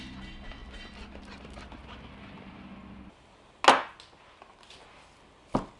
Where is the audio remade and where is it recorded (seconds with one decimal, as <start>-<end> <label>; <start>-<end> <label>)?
0.0-5.8 recorded